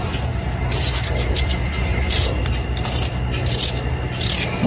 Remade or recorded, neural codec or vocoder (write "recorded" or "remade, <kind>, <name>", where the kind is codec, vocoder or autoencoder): recorded